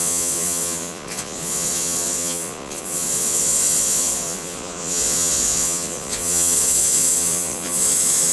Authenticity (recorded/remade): remade